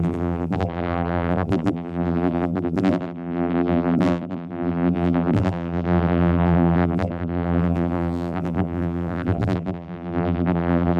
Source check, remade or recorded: remade